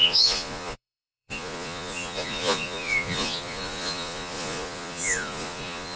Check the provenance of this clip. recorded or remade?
remade